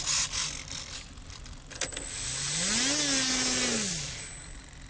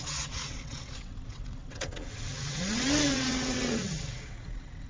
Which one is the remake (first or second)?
second